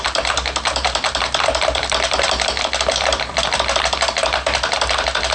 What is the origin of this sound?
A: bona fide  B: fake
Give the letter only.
A